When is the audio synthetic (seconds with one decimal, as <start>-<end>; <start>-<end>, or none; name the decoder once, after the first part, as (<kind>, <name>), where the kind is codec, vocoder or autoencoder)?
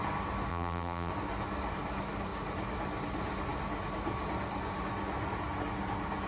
0.5-1.1 (vocoder, BigVGAN v2)